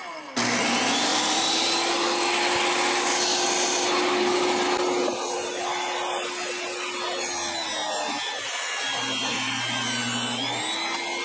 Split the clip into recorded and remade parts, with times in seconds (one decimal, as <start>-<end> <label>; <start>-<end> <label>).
0.0-1.1 recorded; 1.1-1.7 remade; 1.7-11.2 recorded